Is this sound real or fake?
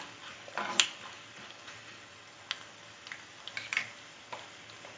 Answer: real